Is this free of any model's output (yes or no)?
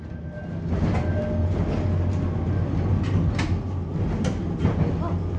yes